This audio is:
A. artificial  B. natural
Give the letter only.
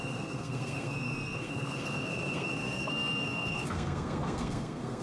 A